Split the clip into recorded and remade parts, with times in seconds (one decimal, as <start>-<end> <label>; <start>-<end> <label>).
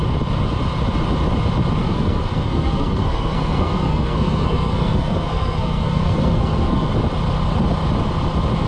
0.0-1.8 recorded; 1.8-6.9 remade; 6.9-8.7 recorded